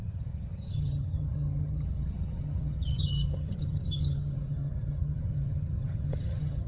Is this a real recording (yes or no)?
no